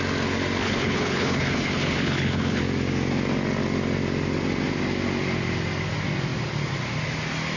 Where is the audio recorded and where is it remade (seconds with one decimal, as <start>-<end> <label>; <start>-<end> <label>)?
0.0-0.6 recorded; 0.6-2.6 remade; 2.6-7.6 recorded